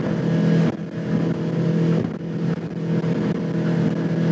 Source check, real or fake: real